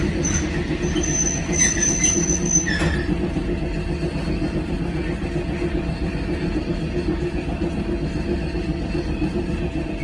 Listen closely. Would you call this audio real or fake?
real